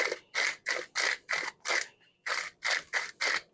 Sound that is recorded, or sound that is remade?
recorded